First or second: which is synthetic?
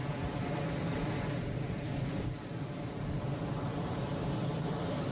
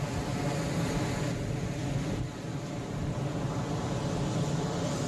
first